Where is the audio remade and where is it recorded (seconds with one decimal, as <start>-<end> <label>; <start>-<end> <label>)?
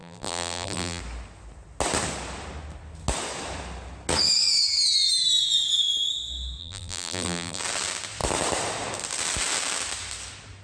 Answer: 0.0-1.0 remade; 1.0-6.6 recorded; 6.6-7.6 remade; 7.6-10.6 recorded